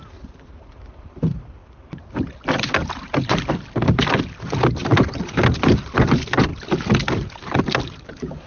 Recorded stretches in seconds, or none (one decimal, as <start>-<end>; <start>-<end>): 0.0-8.5